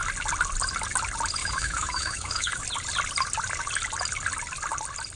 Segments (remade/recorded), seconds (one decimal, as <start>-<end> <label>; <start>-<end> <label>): 0.0-1.4 recorded; 1.4-2.6 remade; 2.6-5.2 recorded